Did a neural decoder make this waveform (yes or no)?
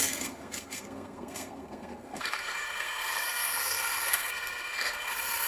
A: yes